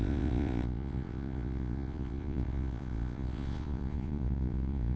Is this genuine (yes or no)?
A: no